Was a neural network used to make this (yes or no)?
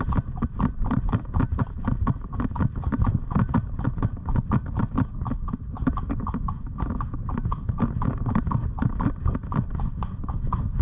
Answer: no